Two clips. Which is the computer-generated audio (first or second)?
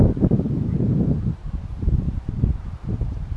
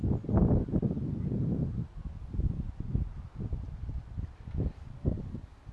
first